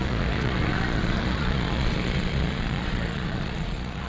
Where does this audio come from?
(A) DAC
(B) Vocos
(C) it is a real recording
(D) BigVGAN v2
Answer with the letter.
B